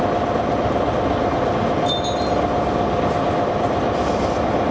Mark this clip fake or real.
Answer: real